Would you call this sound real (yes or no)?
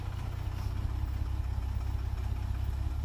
yes